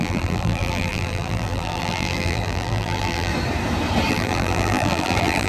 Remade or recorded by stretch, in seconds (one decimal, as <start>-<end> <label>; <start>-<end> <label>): 0.0-3.3 remade; 3.3-4.1 recorded; 4.1-5.5 remade